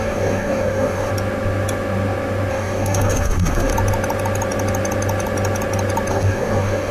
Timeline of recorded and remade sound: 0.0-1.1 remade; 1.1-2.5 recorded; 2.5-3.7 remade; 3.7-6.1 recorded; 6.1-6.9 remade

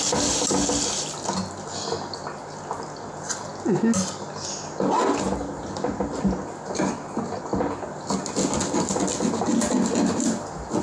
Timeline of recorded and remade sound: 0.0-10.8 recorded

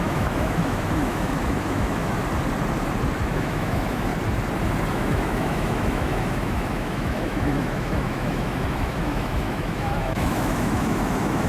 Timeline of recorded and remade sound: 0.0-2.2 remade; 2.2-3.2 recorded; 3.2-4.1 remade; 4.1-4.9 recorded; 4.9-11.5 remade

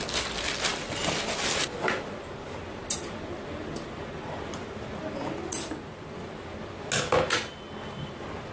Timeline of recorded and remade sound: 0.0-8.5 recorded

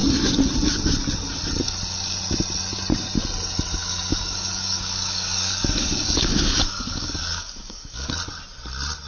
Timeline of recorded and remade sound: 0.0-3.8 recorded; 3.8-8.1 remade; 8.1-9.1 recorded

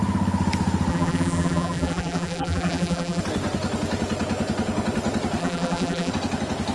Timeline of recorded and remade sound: 0.0-0.9 recorded; 0.9-3.2 remade; 3.2-5.4 recorded; 5.4-6.1 remade; 6.1-6.7 recorded

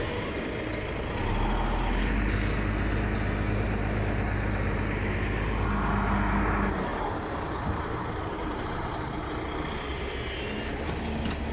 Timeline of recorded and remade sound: 0.0-6.9 recorded; 6.9-9.3 remade; 9.3-11.5 recorded